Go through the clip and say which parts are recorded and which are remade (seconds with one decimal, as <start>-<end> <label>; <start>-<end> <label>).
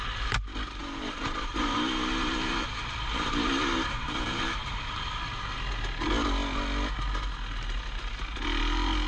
0.0-0.8 recorded; 0.8-4.8 remade; 4.8-9.1 recorded